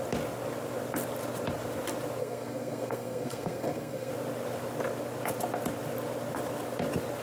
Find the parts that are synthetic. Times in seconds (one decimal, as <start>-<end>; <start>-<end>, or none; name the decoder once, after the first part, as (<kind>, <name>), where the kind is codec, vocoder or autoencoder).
2.2-4.1 (codec, SNAC)